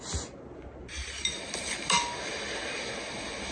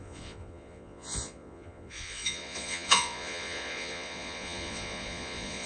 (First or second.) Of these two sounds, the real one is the first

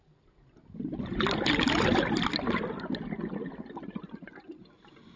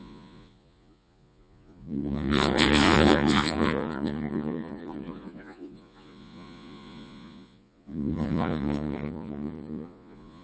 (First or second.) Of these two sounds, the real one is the first